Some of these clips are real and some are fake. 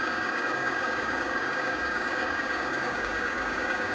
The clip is fake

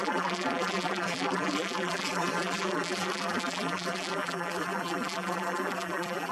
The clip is fake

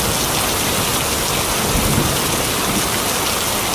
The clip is real